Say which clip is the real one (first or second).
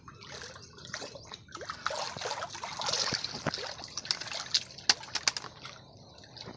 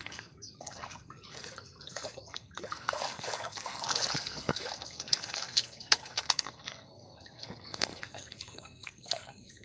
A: first